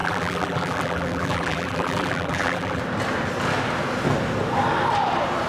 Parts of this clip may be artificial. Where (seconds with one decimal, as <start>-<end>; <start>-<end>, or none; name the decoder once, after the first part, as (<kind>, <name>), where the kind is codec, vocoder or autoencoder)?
0.0-2.8 (vocoder, BigVGAN v2)